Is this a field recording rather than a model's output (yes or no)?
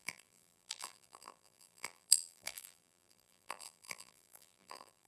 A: no